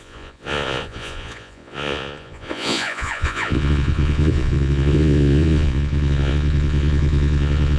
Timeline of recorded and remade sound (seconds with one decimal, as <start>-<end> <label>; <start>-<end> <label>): 0.0-7.8 remade